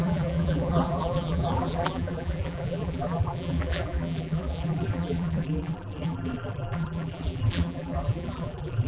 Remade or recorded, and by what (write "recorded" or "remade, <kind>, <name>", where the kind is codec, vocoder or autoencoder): remade, vocoder, BigVGAN v2